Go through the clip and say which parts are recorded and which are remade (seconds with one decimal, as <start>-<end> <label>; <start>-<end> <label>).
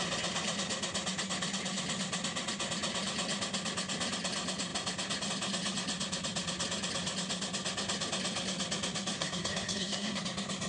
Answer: 0.0-9.1 recorded; 9.1-10.2 remade; 10.2-10.7 recorded